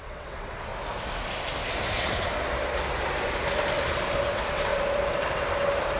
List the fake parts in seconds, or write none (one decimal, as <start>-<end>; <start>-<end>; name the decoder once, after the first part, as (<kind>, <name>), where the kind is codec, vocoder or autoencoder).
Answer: 0.0-0.7 (vocoder, WaveNeXt); 4.3-4.7